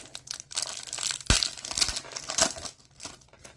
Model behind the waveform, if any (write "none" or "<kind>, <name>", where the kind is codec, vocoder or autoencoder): none